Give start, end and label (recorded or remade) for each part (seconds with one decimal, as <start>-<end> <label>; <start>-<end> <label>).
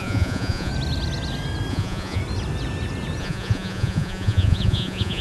0.0-0.7 remade; 0.7-1.7 recorded; 1.7-2.2 remade; 2.2-3.2 recorded; 3.2-5.2 remade